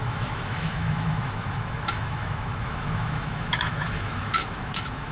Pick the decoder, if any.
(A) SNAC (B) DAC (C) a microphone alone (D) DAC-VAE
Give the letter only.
D